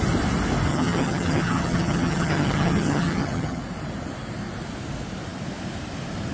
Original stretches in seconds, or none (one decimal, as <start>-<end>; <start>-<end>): 0.0-0.7; 3.6-6.3